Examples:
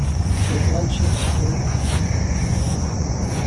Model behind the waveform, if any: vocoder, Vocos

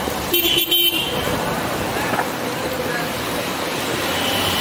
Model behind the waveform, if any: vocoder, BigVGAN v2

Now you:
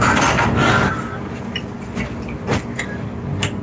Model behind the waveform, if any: none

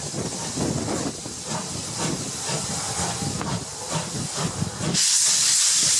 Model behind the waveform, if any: none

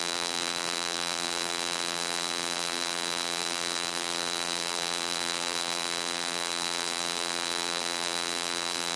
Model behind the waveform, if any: vocoder, BigVGAN v2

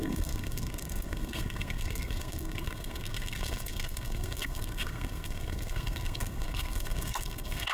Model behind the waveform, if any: codec, SNAC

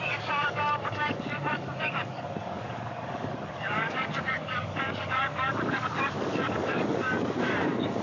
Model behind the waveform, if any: codec, DAC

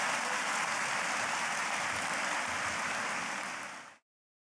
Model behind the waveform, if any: none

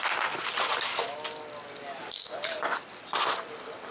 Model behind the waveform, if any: none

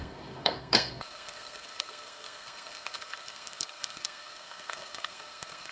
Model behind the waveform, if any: codec, SNAC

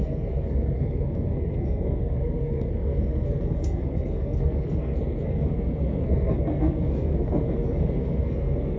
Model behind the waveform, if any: codec, SNAC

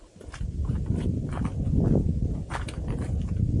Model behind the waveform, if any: none